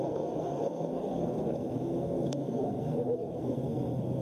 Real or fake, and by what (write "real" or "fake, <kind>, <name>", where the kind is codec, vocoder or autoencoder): fake, codec, SNAC